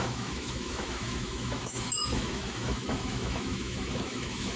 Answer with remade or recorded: remade